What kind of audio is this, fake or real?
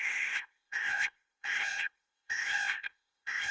fake